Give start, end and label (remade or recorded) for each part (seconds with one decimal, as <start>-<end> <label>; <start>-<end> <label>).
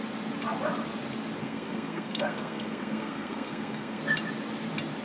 0.0-1.4 recorded; 1.4-4.0 remade; 4.0-5.0 recorded